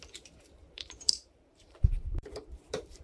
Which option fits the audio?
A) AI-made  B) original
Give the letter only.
A